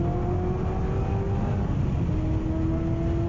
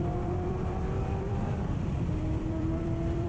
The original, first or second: first